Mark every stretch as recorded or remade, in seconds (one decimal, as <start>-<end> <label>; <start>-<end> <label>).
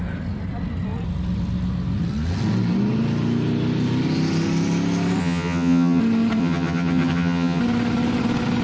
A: 0.0-5.2 recorded; 5.2-6.0 remade; 6.0-6.4 recorded; 6.4-7.6 remade; 7.6-8.6 recorded